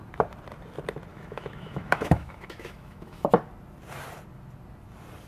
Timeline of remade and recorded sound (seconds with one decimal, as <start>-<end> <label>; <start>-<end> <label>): 0.0-1.1 recorded; 1.1-3.3 remade; 3.3-5.3 recorded